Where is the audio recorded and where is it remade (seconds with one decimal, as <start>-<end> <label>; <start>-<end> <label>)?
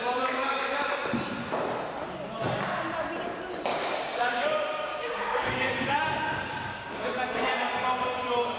0.0-3.7 recorded; 3.7-7.5 remade; 7.5-8.6 recorded